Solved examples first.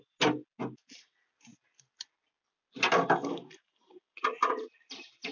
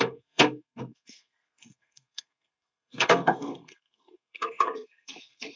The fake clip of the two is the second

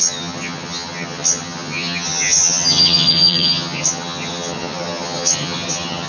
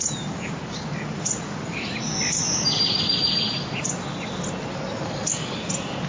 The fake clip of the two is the first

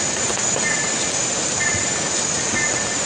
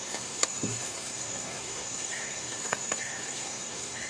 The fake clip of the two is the second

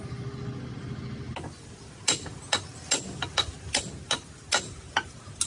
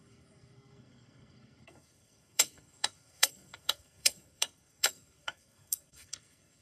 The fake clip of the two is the second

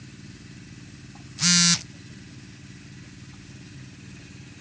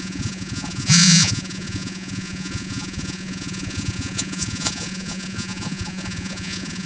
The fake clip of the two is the second